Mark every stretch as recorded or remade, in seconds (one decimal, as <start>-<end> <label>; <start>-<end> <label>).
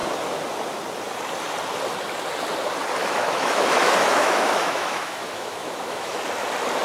0.0-3.0 recorded; 3.0-6.2 remade; 6.2-6.8 recorded